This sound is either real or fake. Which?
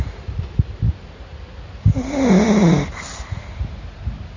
real